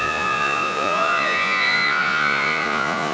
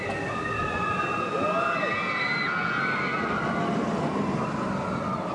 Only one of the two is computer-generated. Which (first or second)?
first